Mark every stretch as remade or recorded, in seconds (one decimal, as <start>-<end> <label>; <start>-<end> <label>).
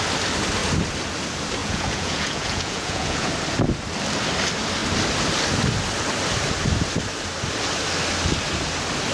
0.0-1.6 recorded; 1.6-3.3 remade; 3.3-9.1 recorded